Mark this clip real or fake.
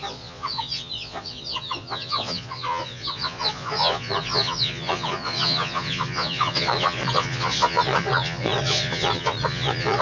fake